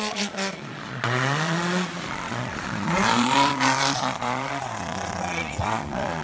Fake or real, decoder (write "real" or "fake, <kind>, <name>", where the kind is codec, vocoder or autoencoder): fake, vocoder, Vocos